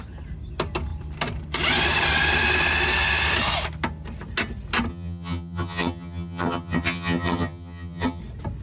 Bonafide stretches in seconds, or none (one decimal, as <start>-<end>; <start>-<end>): 0.0-4.9; 8.2-8.6